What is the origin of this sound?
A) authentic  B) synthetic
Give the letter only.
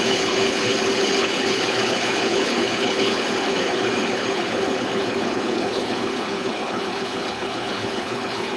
B